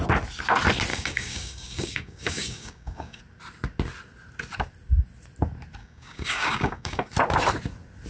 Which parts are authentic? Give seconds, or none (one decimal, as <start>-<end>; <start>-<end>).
0.0-0.9; 3.2-5.8; 7.1-8.1